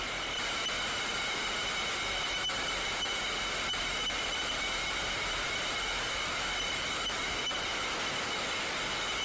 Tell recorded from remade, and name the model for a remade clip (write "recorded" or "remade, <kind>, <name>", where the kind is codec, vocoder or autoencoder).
recorded